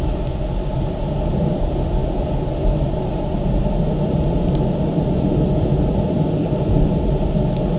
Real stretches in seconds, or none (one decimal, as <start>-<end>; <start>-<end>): 0.0-7.8